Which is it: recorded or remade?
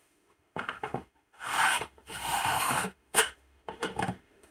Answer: remade